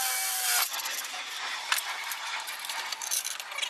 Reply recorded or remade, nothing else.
recorded